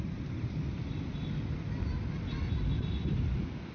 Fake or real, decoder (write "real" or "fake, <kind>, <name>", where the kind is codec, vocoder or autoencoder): real